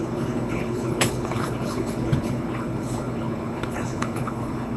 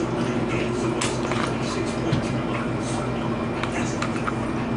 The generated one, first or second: first